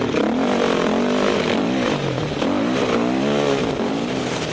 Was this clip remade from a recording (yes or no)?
no